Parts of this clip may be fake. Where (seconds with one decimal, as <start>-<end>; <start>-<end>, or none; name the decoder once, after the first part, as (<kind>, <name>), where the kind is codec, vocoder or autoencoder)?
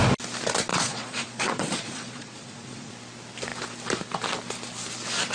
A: 0.7-2.9 (vocoder, Vocos)